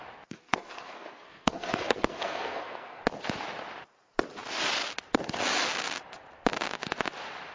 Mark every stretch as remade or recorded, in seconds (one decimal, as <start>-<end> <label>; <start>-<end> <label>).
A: 0.0-0.4 recorded; 0.4-3.0 remade; 3.0-7.5 recorded